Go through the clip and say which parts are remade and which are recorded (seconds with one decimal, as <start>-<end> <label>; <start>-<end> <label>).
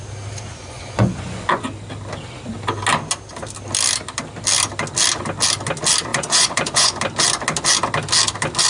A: 0.0-0.5 recorded; 0.5-1.6 remade; 1.6-6.1 recorded; 6.1-7.0 remade; 7.0-8.7 recorded